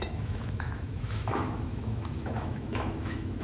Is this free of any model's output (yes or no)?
no